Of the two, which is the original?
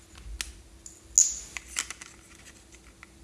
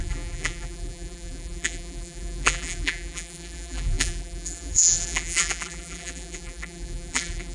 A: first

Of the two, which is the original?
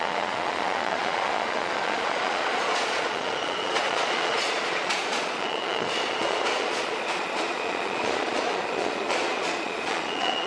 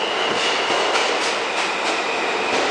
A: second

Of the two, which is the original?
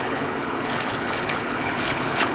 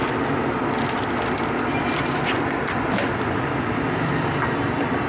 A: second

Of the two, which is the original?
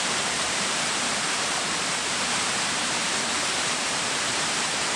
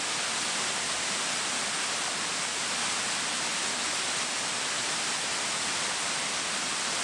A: second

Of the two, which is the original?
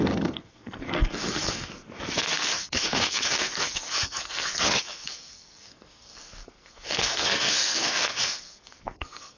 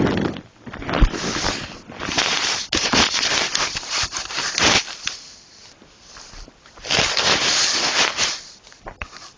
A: second